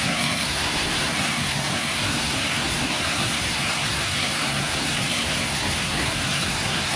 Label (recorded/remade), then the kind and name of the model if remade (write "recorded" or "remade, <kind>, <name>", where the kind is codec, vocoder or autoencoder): remade, codec, SNAC